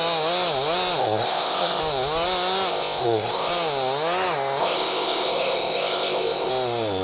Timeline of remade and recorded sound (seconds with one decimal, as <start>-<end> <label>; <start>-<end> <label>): 0.0-1.0 recorded; 1.0-1.8 remade; 1.8-2.7 recorded; 2.7-3.5 remade; 3.5-4.6 recorded; 4.6-6.5 remade; 6.5-7.0 recorded